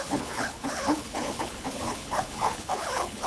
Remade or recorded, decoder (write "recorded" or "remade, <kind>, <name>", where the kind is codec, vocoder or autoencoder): remade, codec, HILCodec